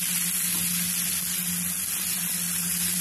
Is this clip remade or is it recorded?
recorded